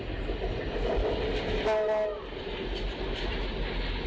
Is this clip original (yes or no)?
yes